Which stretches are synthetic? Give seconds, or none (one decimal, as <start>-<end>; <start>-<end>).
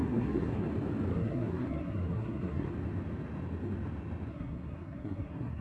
0.0-0.7; 1.1-2.7; 4.3-5.6